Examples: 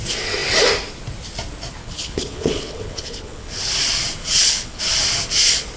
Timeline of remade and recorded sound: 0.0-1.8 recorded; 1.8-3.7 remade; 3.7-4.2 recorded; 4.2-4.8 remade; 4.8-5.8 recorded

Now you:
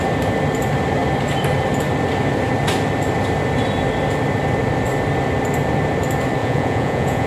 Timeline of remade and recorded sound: 0.0-6.4 recorded; 6.4-7.3 remade

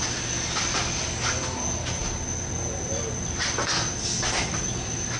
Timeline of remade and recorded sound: 0.0-5.2 recorded

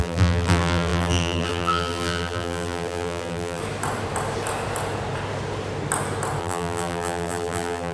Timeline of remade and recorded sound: 0.0-3.6 remade; 3.6-6.4 recorded; 6.4-7.9 remade

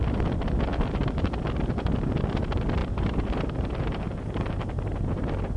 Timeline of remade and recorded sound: 0.0-2.8 recorded; 2.8-5.6 remade

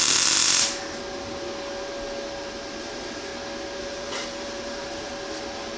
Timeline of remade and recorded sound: 0.0-0.4 remade; 0.4-2.8 recorded; 2.8-3.3 remade; 3.3-3.8 recorded; 3.8-5.1 remade; 5.1-5.8 recorded